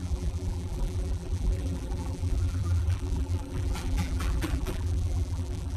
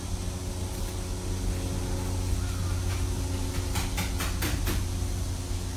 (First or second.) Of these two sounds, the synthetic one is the first